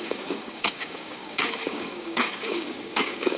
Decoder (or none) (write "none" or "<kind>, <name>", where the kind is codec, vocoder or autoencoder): codec, DAC